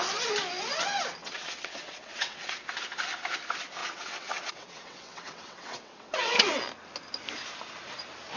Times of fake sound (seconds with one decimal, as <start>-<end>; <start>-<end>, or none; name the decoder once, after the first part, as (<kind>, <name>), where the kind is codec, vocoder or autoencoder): 1.2-2.5 (vocoder, WaveNeXt); 3.8-6.6